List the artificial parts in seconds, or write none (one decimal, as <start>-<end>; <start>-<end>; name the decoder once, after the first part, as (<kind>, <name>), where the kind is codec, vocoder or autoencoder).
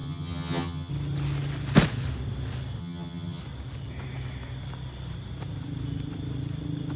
0.0-0.9 (vocoder, HiFi-GAN); 2.8-3.4